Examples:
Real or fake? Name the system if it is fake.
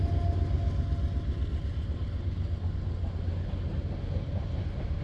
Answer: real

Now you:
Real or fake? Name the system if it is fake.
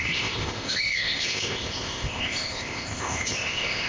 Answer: fake, codec, ZipCodec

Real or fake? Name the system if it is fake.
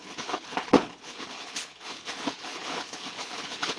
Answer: fake, codec, HILCodec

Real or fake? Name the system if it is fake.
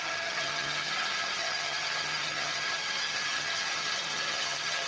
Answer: fake, vocoder, HiFi-GAN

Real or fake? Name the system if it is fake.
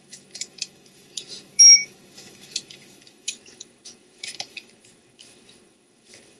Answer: fake, autoencoder, DAC-VAE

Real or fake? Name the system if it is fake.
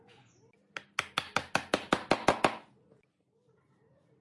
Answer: real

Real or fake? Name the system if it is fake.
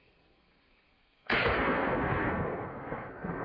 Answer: fake, codec, SNAC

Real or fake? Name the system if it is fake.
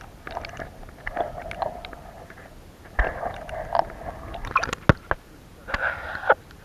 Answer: real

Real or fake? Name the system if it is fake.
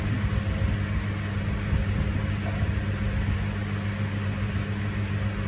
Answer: real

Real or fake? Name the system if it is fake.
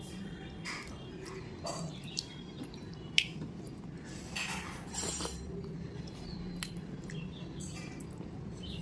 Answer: real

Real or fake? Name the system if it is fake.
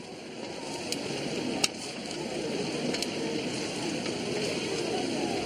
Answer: real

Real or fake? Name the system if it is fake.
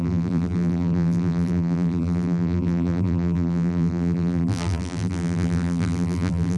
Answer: fake, vocoder, BigVGAN v2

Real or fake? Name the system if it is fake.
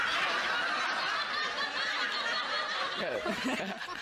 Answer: real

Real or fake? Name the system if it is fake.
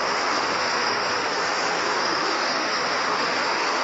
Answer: fake, autoencoder, DAC-VAE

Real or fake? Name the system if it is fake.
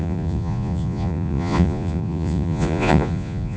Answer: fake, vocoder, Vocos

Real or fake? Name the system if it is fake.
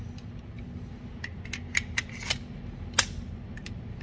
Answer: real